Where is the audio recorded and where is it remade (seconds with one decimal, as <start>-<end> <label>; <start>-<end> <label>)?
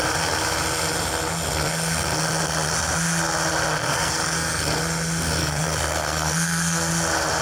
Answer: 0.0-3.9 recorded; 3.9-4.6 remade; 4.6-5.4 recorded; 5.4-6.9 remade; 6.9-7.4 recorded